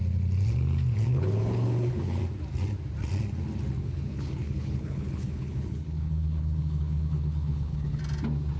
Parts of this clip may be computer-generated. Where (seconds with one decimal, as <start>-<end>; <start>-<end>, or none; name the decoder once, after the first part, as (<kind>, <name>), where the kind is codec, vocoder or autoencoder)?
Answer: 1.1-2.2 (codec, HILCodec); 3.8-8.0